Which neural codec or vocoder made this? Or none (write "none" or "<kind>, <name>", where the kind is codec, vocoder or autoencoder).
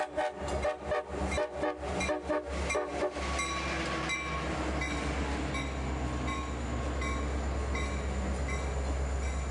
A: none